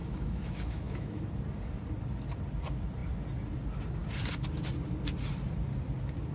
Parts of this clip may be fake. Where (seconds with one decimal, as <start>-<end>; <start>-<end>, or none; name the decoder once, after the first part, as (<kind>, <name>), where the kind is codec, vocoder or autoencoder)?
0.0-1.2 (autoencoder, DAC-VAE)